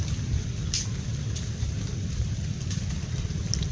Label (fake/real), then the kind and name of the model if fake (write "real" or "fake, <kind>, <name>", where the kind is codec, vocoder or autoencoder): real